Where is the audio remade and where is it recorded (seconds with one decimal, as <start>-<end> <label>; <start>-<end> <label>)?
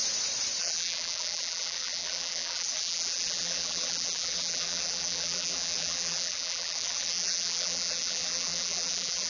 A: 0.0-0.6 recorded; 0.6-9.3 remade